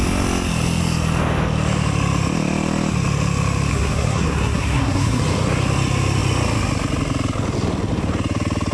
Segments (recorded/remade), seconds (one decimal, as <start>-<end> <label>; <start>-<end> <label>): 0.0-3.7 recorded; 3.7-5.2 remade; 5.2-8.7 recorded